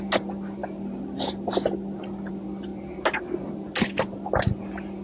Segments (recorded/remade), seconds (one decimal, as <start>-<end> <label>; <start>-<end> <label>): 0.0-5.0 recorded